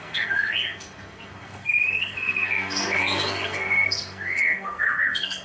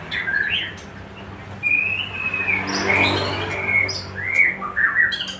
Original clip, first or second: second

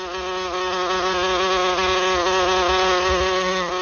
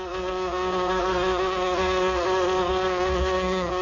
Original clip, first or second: first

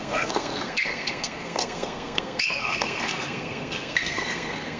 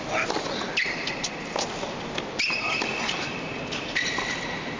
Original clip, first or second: second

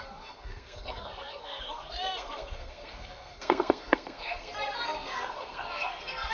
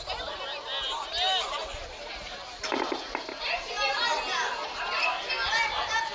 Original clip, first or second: second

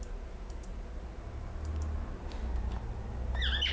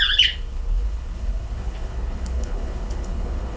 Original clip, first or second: first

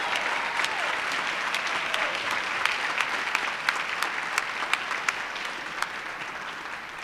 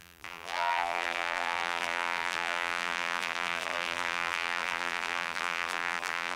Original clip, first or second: first